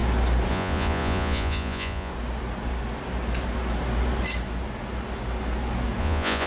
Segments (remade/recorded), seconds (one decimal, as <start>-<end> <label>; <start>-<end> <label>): 0.0-0.5 recorded; 0.5-2.1 remade; 2.1-6.0 recorded; 6.0-6.5 remade